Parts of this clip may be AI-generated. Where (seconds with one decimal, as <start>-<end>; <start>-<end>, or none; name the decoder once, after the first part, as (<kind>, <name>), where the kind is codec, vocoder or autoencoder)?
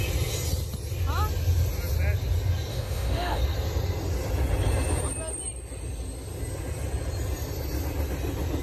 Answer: 2.7-3.4 (autoencoder, DAC-VAE)